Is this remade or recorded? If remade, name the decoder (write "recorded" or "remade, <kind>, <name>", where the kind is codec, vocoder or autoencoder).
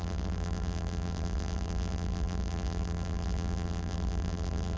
remade, vocoder, BigVGAN v2